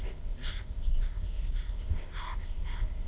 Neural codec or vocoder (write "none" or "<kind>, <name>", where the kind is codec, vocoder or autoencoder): codec, ZipCodec